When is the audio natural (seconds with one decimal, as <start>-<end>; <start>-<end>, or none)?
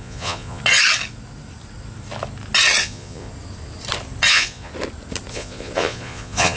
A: 0.6-2.8; 3.3-4.3; 4.7-5.3